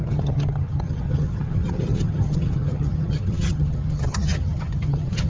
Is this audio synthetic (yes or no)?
yes